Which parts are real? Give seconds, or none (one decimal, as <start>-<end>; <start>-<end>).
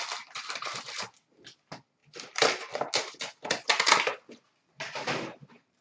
0.0-5.8